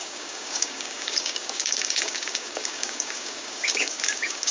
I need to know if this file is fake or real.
fake